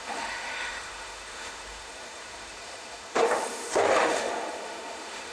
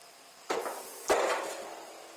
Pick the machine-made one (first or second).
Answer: first